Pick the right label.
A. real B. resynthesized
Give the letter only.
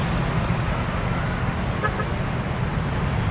A